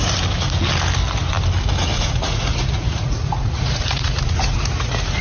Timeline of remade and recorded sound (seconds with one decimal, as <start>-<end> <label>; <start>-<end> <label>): 0.0-1.9 recorded; 1.9-5.2 remade